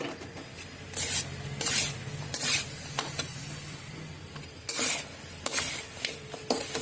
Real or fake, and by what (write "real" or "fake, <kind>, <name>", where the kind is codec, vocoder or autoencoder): real